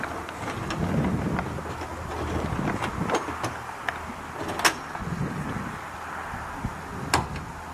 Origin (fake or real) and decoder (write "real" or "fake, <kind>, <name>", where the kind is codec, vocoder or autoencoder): real